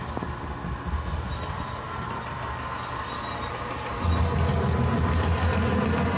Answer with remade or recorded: recorded